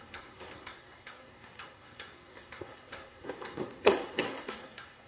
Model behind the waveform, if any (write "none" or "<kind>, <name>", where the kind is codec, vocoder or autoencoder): codec, SNAC